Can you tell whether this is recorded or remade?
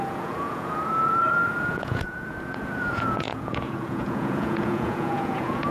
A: remade